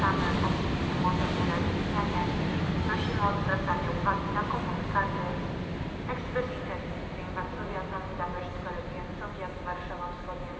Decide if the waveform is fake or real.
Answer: real